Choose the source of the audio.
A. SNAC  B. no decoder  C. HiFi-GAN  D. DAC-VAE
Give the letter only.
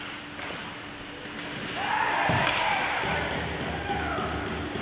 B